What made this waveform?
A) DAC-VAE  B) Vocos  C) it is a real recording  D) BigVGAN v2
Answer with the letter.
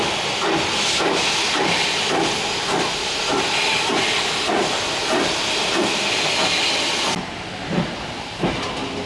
C